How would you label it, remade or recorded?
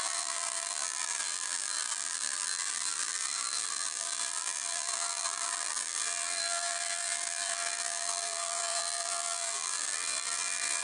remade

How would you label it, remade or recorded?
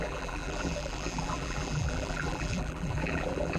remade